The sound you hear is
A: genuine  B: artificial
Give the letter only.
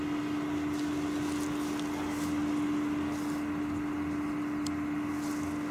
A